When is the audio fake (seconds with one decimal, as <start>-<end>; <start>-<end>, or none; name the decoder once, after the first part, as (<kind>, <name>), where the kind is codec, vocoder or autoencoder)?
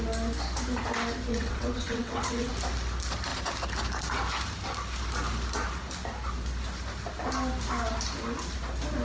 1.3-2.5 (vocoder, WaveNeXt)